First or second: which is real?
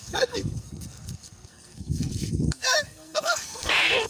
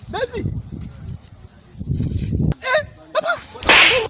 second